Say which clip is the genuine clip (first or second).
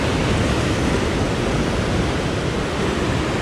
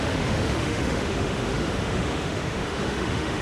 first